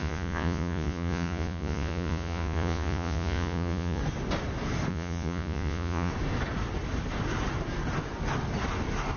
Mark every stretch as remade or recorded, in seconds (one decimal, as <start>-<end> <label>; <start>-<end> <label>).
0.0-4.0 remade; 4.0-4.9 recorded; 4.9-6.1 remade; 6.1-9.2 recorded